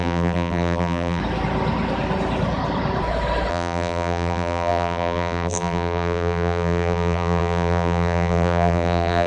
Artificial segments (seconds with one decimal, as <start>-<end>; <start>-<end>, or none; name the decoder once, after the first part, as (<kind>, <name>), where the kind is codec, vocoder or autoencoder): 0.0-1.2 (vocoder, BigVGAN v2); 3.5-9.3